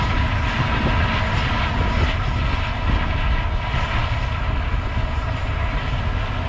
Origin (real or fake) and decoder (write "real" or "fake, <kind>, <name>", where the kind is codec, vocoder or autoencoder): real